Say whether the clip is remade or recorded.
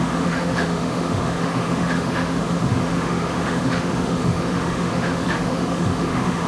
remade